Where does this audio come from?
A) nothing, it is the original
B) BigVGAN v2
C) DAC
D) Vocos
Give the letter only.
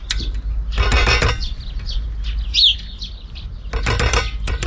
A